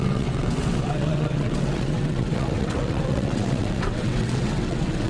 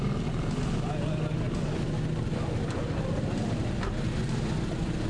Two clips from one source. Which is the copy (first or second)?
first